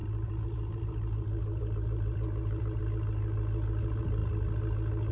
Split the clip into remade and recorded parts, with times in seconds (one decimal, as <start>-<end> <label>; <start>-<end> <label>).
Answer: 0.0-2.8 remade; 2.8-5.1 recorded